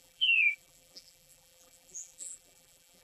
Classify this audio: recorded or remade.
remade